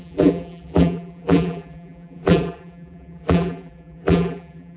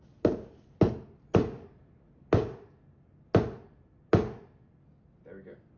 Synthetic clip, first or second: first